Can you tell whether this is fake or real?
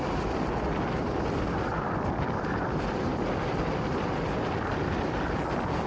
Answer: real